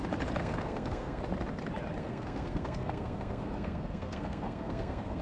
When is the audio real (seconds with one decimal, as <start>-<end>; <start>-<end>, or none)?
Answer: 0.0-0.4; 1.2-2.0